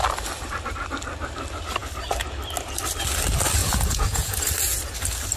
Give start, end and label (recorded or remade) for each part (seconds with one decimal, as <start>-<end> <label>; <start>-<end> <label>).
0.0-3.6 recorded; 3.6-4.5 remade; 4.5-5.4 recorded